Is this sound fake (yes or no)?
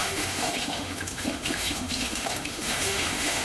yes